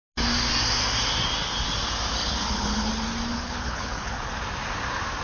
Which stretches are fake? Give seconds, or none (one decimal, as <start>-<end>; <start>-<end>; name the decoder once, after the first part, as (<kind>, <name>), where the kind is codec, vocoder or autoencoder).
2.2-2.9 (codec, HILCodec); 3.3-4.3